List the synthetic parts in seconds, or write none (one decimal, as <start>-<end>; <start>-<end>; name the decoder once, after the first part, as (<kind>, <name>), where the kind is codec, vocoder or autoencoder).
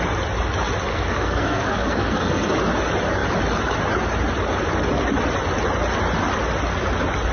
0.9-2.5 (codec, SNAC)